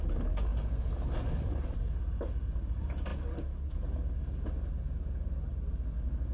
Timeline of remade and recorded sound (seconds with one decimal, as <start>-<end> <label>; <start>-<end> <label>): 0.0-6.3 recorded